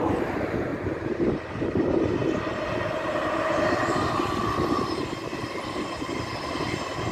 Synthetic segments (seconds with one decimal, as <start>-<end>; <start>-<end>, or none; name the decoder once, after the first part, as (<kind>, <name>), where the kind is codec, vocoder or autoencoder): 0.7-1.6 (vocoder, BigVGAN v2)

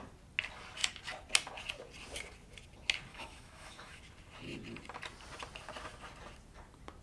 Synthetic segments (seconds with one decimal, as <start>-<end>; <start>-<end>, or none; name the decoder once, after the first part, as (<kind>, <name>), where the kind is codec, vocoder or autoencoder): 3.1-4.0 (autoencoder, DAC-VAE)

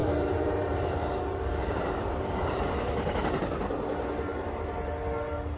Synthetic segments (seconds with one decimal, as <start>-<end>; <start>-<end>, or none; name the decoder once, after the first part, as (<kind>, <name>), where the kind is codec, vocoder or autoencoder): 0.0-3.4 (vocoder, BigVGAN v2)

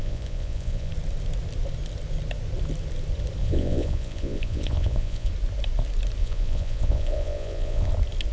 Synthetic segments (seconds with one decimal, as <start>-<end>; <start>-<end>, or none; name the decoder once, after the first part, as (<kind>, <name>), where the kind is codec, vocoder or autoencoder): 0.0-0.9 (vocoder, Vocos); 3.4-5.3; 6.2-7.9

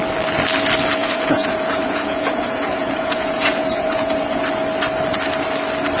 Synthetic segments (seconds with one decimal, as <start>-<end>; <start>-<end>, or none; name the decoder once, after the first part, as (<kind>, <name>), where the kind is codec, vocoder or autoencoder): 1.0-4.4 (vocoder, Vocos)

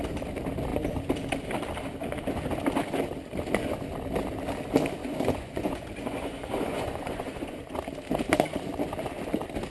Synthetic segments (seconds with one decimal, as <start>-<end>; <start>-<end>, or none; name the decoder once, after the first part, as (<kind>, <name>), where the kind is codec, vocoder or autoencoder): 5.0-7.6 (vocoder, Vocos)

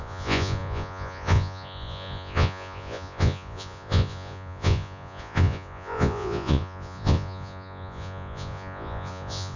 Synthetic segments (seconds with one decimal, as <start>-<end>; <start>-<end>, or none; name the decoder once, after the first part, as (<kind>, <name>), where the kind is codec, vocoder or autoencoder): 0.0-9.6 (vocoder, Vocos)